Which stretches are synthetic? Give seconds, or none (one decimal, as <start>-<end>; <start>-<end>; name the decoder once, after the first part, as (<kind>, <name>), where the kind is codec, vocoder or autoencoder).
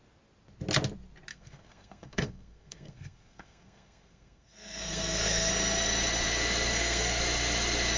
1.3-5.5 (codec, SNAC); 6.7-7.2